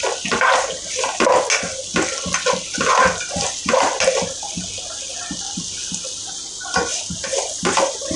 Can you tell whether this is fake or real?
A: real